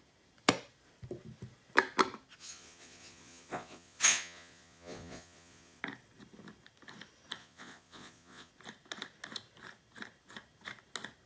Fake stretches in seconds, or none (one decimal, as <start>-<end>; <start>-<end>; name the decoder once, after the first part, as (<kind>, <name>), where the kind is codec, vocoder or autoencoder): 2.4-5.8 (vocoder, Vocos); 7.4-8.5